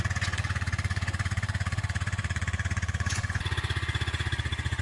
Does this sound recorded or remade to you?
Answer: remade